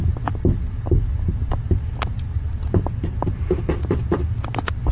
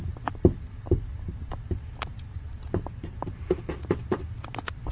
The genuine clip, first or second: first